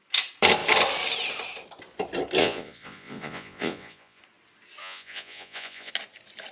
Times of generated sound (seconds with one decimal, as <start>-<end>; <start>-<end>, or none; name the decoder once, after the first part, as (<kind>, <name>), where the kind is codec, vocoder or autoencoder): 2.4-4.2 (vocoder, Vocos); 4.8-5.9